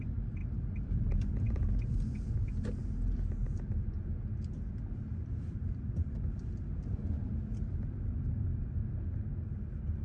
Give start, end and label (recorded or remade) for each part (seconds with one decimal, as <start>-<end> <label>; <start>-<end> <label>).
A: 0.0-0.4 recorded; 0.4-2.3 remade; 2.3-3.4 recorded; 3.4-8.0 remade; 8.0-10.0 recorded